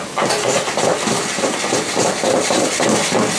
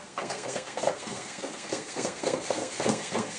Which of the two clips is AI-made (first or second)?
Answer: second